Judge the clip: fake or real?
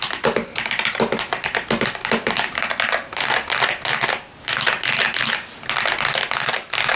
real